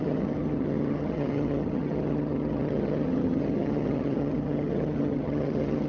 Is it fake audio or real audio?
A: fake